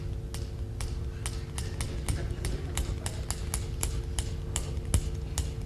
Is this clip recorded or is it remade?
recorded